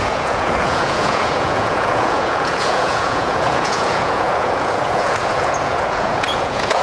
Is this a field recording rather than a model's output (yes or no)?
no